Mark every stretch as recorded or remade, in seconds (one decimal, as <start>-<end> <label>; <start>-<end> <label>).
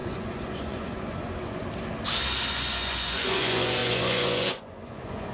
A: 0.0-1.6 remade; 1.6-2.5 recorded; 2.5-5.3 remade